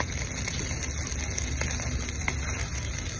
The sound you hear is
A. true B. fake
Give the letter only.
A